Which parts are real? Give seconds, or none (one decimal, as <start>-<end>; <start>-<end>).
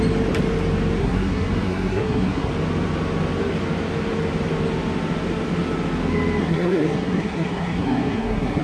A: 0.0-1.0; 2.5-6.4